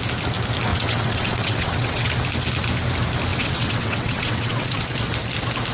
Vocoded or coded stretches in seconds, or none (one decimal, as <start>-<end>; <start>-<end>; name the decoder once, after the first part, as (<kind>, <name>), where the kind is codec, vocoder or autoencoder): 0.7-2.1 (vocoder, WaveNeXt); 3.3-4.9